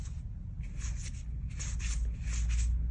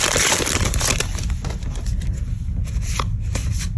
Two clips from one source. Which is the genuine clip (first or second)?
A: first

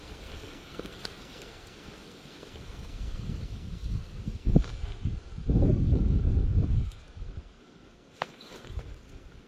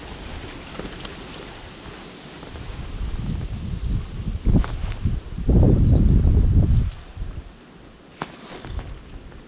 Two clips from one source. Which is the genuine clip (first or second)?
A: second